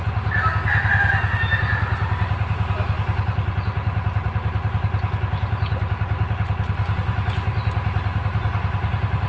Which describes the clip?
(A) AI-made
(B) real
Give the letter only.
B